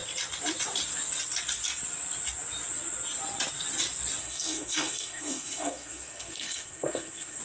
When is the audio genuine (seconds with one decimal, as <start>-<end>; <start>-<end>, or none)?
0.0-4.2